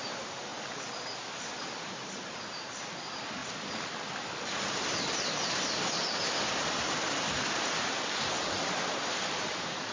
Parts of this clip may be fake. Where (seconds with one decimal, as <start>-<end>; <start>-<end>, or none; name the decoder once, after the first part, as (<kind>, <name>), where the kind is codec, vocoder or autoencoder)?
0.0-0.5 (vocoder, BigVGAN v2); 1.6-3.4; 8.6-9.9